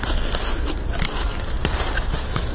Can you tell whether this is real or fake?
real